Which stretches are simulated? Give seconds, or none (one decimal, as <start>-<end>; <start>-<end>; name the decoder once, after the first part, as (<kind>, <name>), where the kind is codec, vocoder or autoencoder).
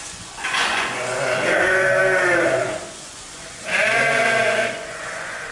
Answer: 0.0-2.0 (vocoder, Vocos); 2.6-5.5